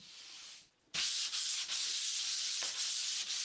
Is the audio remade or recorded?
remade